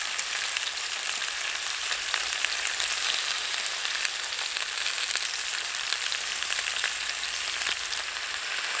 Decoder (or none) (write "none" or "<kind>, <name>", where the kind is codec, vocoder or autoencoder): vocoder, BigVGAN v2